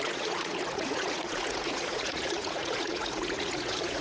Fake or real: fake